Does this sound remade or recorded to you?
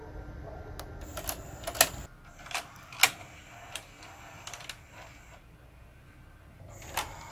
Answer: recorded